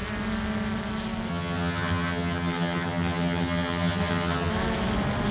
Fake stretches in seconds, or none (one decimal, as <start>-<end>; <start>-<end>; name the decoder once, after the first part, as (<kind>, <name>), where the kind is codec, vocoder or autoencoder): 1.3-4.5 (vocoder, HiFi-GAN)